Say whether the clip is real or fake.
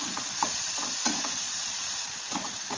fake